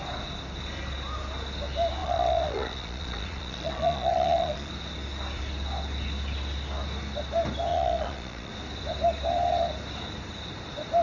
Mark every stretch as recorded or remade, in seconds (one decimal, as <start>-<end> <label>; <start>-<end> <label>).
0.0-2.0 recorded; 2.0-4.7 remade; 4.7-7.7 recorded; 7.7-8.5 remade; 8.5-11.0 recorded

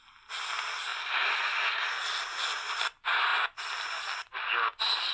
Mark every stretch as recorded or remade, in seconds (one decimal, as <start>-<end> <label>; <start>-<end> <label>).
0.0-5.1 recorded